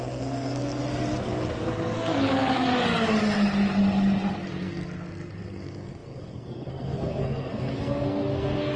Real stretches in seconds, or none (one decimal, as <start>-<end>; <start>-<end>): 0.8-1.6; 2.7-4.5

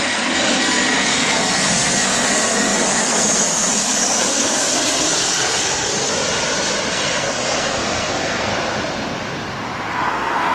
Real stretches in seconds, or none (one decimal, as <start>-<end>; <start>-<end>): 6.1-6.9; 8.5-9.9